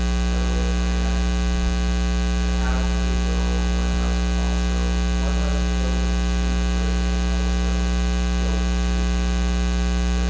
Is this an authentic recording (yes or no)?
yes